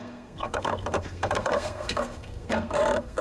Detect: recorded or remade remade